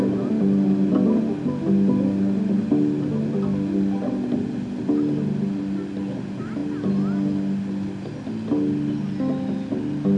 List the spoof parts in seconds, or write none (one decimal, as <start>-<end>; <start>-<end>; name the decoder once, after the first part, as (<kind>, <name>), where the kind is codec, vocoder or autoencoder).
none